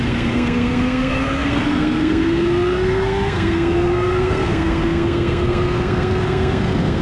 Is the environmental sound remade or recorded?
remade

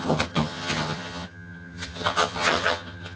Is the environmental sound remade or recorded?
remade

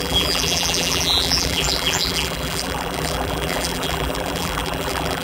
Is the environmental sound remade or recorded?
remade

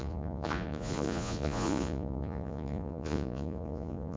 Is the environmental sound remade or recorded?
remade